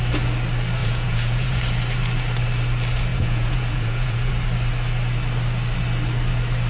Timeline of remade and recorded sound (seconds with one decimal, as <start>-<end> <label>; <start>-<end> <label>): 0.0-0.8 recorded; 0.8-1.6 remade; 1.6-3.1 recorded; 3.1-4.3 remade; 4.3-6.7 recorded